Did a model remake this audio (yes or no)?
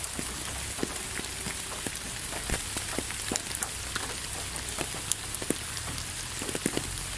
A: no